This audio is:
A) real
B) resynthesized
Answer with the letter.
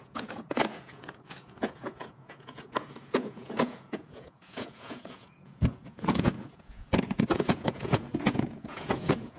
B